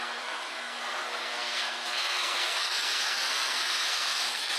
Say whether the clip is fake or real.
fake